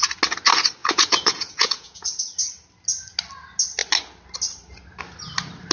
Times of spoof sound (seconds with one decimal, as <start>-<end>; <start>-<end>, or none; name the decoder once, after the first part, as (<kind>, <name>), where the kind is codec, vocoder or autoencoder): 0.8-2.2 (vocoder, Vocos)